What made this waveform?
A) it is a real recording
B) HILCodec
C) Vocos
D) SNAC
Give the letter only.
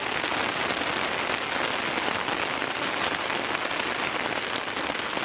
A